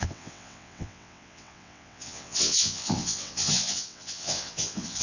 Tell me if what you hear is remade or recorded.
remade